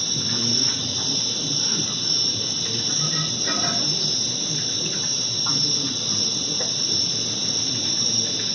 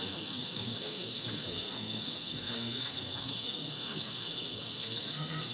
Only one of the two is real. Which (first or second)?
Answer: first